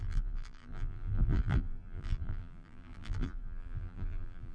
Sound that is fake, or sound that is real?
fake